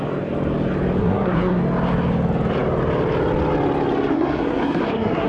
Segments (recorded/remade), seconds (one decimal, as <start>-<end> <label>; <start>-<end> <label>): 0.0-1.0 recorded; 1.0-1.6 remade; 1.6-4.1 recorded; 4.1-5.3 remade